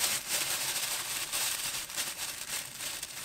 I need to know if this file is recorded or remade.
remade